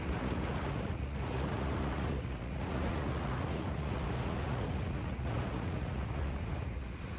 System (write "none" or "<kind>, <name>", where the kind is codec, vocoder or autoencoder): vocoder, Vocos